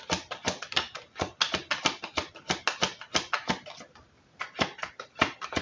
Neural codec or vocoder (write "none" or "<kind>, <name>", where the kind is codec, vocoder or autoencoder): none